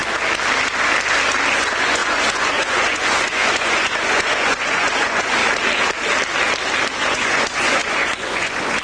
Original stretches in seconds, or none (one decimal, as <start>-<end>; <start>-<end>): 0.0-1.5; 5.4-7.0